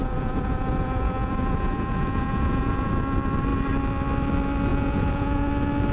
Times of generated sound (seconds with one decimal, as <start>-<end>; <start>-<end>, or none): 0.0-2.9; 4.7-5.5